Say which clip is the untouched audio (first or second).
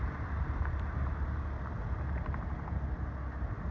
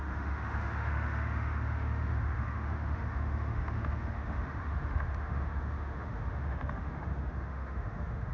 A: first